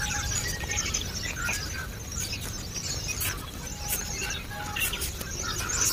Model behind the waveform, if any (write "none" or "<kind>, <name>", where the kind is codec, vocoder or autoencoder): none